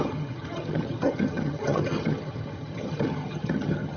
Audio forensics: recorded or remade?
remade